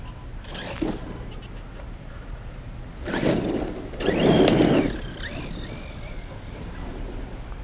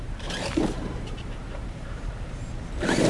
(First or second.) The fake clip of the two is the second